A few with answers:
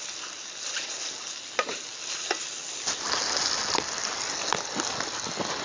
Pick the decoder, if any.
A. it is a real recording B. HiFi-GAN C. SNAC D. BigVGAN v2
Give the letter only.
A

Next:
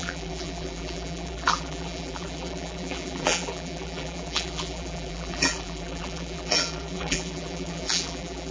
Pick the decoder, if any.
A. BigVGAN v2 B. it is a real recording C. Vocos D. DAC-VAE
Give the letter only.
A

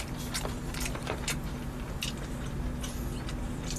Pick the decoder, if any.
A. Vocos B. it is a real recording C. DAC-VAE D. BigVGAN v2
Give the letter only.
D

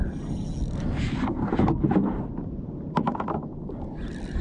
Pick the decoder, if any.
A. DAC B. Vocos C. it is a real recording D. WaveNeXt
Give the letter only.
C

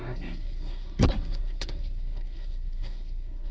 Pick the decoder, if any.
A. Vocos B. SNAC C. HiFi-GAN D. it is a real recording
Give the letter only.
B